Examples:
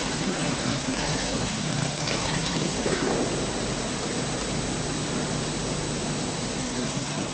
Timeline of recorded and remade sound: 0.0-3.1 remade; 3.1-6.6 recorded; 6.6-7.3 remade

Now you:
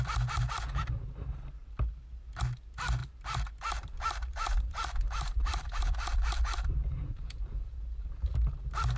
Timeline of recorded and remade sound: 0.0-3.0 recorded; 3.0-7.7 remade; 7.7-9.0 recorded